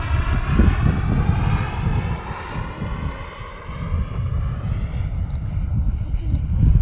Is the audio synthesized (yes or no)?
no